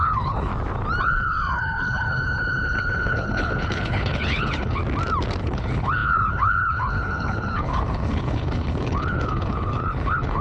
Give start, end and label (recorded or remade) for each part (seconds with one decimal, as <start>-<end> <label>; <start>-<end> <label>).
0.0-0.5 remade; 0.5-1.0 recorded; 1.0-4.8 remade; 4.8-5.4 recorded; 5.4-10.4 remade